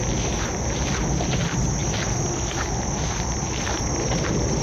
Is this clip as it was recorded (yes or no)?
yes